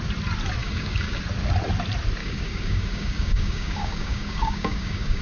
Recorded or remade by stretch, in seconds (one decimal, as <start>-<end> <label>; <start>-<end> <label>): 0.0-0.6 recorded; 0.6-1.2 remade; 1.2-2.2 recorded; 2.2-5.2 remade